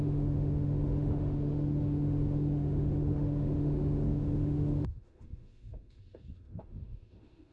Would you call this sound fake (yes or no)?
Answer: yes